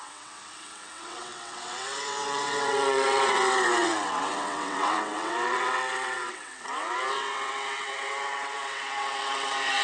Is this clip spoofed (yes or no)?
yes